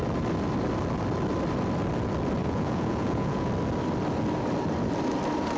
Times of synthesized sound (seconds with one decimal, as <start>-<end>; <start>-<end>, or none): 2.4-3.5